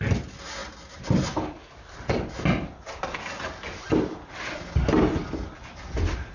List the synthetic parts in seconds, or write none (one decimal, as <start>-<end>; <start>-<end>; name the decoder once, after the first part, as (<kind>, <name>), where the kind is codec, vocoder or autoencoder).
none